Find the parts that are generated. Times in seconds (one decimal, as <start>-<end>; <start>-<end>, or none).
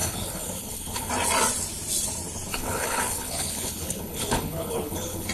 0.0-1.1; 2.5-5.3